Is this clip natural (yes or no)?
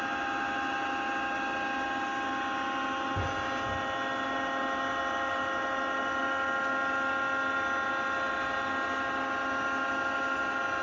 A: yes